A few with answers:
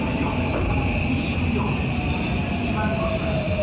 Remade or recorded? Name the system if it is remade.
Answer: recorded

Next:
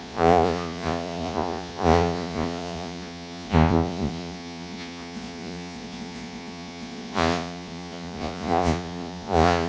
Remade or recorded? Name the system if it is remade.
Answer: remade, vocoder, Vocos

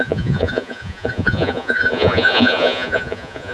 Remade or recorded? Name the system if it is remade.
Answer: remade, vocoder, Vocos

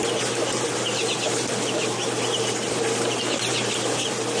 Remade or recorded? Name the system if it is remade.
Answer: recorded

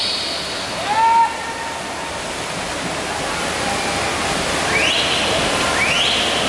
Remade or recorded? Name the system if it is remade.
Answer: recorded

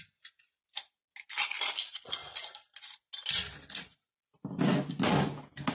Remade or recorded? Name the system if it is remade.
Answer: recorded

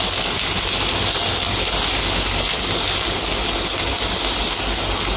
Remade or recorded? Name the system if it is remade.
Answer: recorded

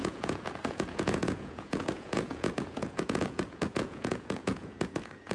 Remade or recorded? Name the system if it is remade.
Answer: remade, vocoder, Vocos